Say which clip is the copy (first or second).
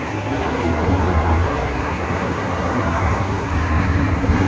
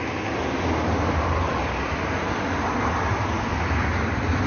first